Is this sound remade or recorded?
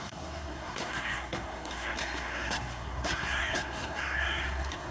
remade